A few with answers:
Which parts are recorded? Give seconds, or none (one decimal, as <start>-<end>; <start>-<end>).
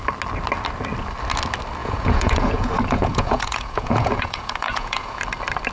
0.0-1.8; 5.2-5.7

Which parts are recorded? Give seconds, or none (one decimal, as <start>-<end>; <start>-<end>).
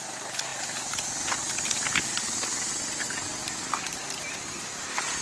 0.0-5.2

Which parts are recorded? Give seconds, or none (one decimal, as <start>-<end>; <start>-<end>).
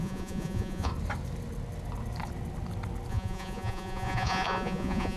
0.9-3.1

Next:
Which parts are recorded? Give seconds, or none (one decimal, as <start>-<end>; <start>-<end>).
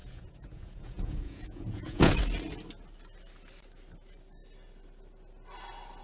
2.1-6.0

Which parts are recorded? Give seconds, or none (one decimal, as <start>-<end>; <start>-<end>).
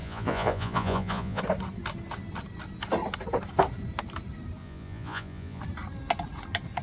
1.4-4.6; 5.6-6.8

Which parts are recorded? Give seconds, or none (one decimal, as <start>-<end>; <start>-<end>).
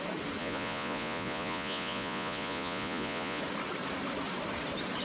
0.0-0.4; 3.4-5.0